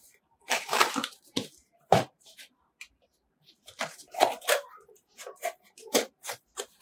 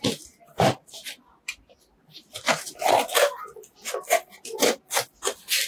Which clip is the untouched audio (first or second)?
second